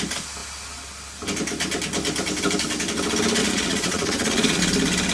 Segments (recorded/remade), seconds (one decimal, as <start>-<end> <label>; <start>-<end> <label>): 0.0-3.4 recorded; 3.4-4.6 remade; 4.6-5.1 recorded